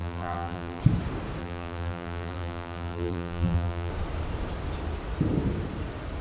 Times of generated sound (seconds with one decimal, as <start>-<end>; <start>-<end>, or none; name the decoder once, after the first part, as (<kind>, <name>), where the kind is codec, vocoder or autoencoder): 0.0-0.8 (vocoder, BigVGAN v2); 1.4-3.9

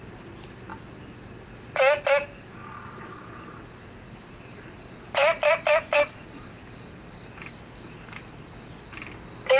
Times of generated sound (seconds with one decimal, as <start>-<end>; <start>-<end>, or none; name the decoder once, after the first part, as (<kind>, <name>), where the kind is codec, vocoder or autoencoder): 2.6-7.6 (vocoder, BigVGAN v2)

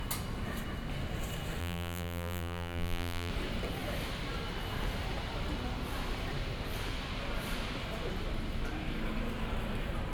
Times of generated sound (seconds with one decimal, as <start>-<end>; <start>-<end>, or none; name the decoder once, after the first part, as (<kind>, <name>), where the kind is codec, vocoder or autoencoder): 1.6-3.3 (vocoder, BigVGAN v2)

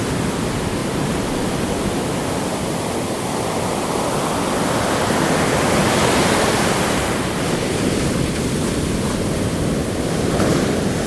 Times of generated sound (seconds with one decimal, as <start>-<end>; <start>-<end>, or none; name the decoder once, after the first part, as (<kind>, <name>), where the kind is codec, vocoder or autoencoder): 0.8-2.3 (vocoder, BigVGAN v2); 5.8-8.2; 9.8-10.3

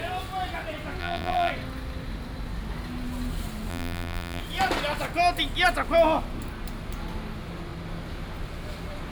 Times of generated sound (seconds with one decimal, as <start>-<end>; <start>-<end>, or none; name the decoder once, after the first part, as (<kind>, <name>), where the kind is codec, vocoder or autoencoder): 1.0-1.5 (vocoder, BigVGAN v2); 3.7-4.4

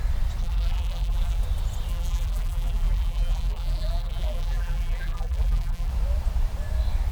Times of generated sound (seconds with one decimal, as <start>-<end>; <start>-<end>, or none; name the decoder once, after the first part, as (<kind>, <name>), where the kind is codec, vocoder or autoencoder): 0.4-1.4 (vocoder, BigVGAN v2); 1.9-5.9